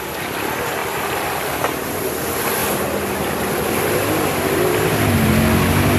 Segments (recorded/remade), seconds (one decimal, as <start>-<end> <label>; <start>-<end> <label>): 0.0-0.8 recorded; 0.8-2.0 remade; 2.0-2.6 recorded; 2.6-4.6 remade; 4.6-6.0 recorded